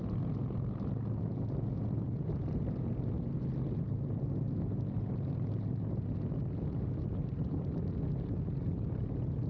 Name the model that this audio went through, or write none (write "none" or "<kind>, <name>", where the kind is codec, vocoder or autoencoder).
none